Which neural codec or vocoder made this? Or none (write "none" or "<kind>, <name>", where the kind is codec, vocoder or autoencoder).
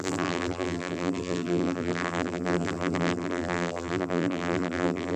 vocoder, BigVGAN v2